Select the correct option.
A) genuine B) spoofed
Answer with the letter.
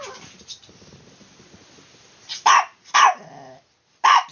A